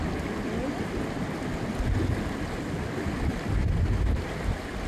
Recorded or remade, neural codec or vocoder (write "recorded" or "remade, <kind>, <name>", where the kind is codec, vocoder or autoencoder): recorded